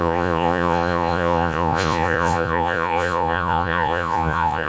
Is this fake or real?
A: fake